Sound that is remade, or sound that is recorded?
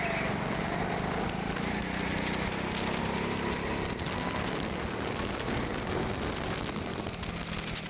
recorded